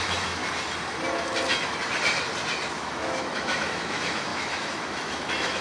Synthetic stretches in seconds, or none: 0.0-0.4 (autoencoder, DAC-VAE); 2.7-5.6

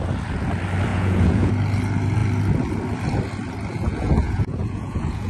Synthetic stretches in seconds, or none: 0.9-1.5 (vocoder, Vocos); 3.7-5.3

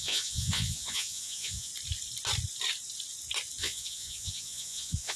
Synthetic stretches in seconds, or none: 0.0-1.7 (vocoder, Vocos); 3.6-5.2